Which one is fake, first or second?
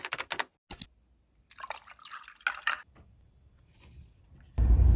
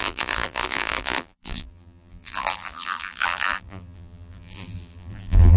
second